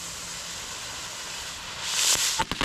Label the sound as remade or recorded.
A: recorded